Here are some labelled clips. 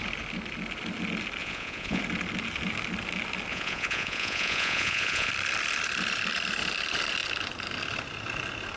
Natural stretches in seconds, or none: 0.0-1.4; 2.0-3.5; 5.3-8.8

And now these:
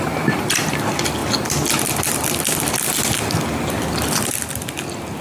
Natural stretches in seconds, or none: 0.0-5.2

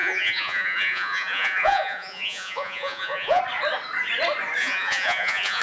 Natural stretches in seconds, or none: 3.4-4.6

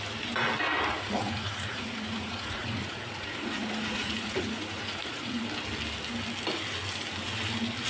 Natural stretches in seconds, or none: 0.0-0.9; 5.4-7.9

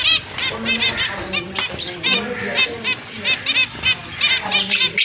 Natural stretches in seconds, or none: 0.0-5.0

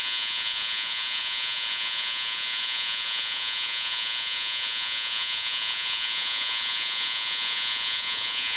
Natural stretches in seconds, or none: none

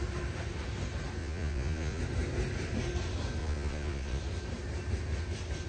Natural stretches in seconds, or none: 0.0-1.2; 2.0-3.4; 4.2-5.7